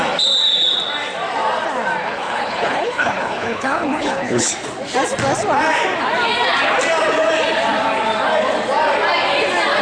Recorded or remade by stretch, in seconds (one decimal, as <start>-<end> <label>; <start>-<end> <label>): 0.0-2.0 recorded; 2.0-4.5 remade; 4.5-9.8 recorded